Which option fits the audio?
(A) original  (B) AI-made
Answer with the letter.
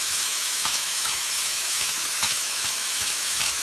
B